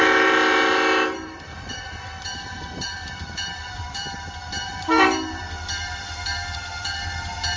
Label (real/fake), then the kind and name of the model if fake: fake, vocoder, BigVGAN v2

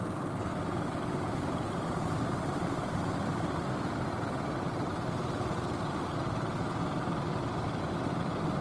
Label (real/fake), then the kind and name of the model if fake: real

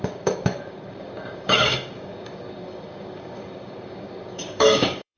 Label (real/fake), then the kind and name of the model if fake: fake, codec, DAC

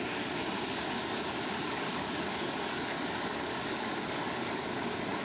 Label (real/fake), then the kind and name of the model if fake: fake, codec, DAC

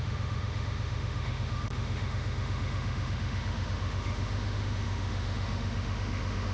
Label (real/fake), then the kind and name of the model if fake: fake, autoencoder, DAC-VAE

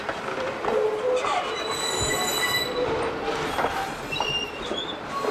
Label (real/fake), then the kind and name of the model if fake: real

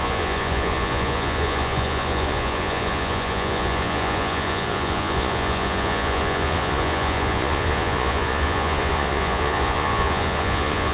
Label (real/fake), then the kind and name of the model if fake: fake, vocoder, Vocos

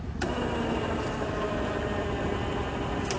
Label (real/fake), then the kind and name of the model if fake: real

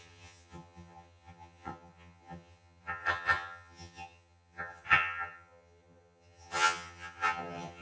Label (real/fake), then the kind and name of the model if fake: fake, vocoder, HiFi-GAN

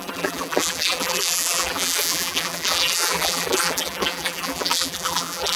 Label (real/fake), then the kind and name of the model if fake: fake, vocoder, BigVGAN v2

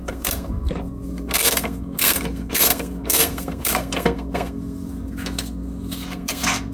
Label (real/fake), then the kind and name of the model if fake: fake, codec, SNAC